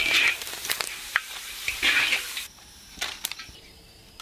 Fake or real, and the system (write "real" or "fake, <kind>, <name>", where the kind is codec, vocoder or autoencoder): fake, vocoder, BigVGAN v2